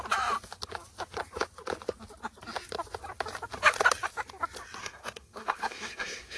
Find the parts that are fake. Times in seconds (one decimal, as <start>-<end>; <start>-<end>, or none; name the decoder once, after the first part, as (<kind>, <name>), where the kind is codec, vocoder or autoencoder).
4.8-6.4 (codec, SNAC)